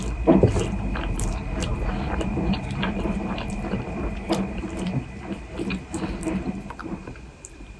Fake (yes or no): yes